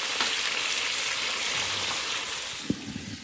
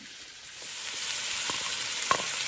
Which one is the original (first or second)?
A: second